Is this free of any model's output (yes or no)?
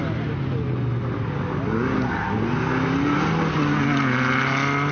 yes